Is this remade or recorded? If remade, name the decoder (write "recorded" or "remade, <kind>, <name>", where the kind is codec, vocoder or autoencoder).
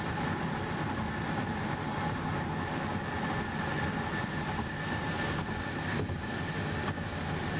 recorded